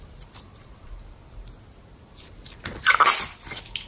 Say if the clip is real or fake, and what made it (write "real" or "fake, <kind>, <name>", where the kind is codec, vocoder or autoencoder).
real